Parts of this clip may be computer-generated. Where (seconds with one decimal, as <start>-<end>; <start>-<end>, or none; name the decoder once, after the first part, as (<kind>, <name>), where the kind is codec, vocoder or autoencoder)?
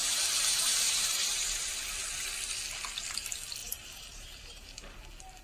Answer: 0.0-1.7 (vocoder, BigVGAN v2); 3.6-5.0